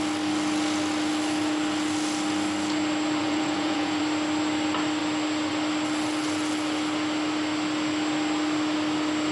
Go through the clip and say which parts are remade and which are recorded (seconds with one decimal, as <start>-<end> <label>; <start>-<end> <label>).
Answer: 0.0-3.2 recorded; 3.2-4.0 remade; 4.0-9.3 recorded